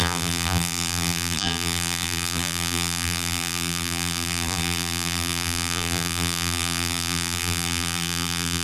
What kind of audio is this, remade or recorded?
remade